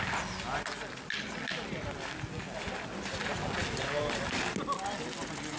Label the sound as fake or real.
real